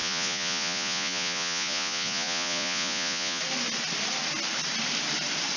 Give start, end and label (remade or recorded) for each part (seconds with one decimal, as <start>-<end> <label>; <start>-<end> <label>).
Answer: 0.0-3.4 remade; 3.4-5.6 recorded